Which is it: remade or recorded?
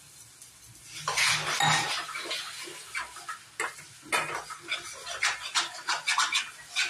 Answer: recorded